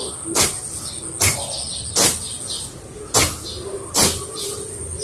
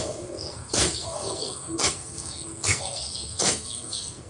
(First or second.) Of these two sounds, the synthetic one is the second